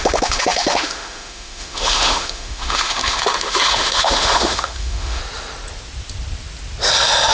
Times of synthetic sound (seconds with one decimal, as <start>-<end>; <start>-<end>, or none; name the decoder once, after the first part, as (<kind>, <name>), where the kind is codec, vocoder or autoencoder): 0.0-5.2 (autoencoder, DAC-VAE)